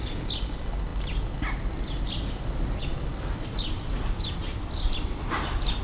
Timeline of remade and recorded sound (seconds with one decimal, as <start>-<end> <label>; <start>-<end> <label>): 0.0-5.8 recorded

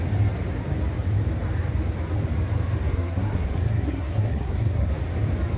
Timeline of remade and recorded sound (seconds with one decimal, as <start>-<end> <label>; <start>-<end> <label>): 0.0-2.9 recorded; 2.9-4.9 remade; 4.9-5.6 recorded

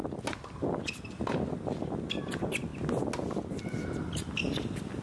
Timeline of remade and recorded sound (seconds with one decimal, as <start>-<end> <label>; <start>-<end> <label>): 0.0-5.0 recorded

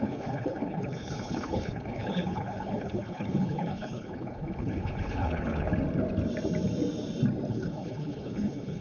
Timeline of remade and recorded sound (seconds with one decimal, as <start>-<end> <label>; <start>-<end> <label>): 0.0-5.7 remade; 5.7-7.5 recorded; 7.5-8.8 remade

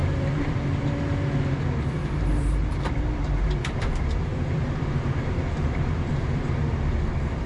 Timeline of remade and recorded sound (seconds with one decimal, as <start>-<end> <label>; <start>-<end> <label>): 0.0-0.8 remade; 0.8-2.0 recorded; 2.0-6.5 remade; 6.5-7.5 recorded

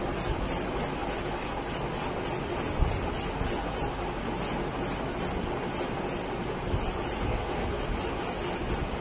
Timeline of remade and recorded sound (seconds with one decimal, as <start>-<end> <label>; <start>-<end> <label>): 0.0-7.3 recorded; 7.3-7.8 remade; 7.8-9.0 recorded

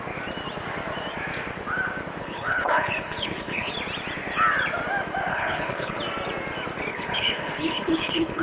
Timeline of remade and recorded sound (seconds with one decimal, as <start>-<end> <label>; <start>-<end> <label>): 0.0-2.2 recorded; 2.2-3.7 remade; 3.7-5.3 recorded; 5.3-6.0 remade; 6.0-6.9 recorded; 6.9-8.4 remade